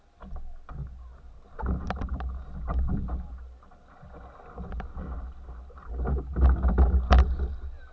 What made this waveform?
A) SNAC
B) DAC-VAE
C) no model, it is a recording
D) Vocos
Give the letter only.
C